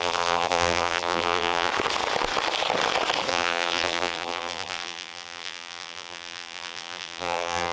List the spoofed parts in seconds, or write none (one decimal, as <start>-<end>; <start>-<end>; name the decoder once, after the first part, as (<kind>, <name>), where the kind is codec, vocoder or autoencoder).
0.0-1.7 (vocoder, BigVGAN v2); 3.3-7.7